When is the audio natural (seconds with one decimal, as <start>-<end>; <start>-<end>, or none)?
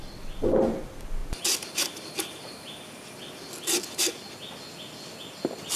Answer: 0.0-5.8